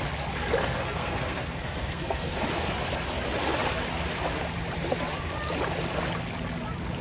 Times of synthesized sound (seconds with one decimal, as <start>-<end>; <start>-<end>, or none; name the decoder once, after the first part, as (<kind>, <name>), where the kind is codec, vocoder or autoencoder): 0.6-2.4 (codec, SNAC)